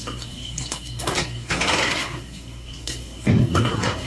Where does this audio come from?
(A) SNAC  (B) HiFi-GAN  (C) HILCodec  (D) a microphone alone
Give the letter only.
A